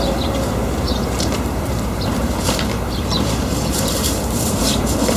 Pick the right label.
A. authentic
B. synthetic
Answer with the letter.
B